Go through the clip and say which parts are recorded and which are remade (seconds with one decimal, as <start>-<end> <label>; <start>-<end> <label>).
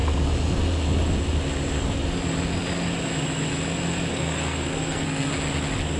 0.0-4.1 recorded; 4.1-5.3 remade; 5.3-6.0 recorded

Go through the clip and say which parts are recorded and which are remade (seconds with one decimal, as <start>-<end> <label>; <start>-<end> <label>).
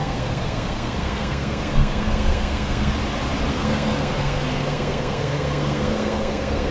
0.0-2.9 remade; 2.9-3.5 recorded; 3.5-6.7 remade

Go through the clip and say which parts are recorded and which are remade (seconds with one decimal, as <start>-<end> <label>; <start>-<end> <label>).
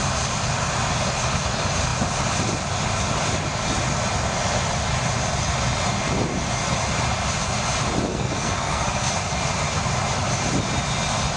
0.0-8.1 recorded; 8.1-9.1 remade; 9.1-11.4 recorded